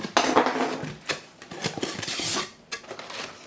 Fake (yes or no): no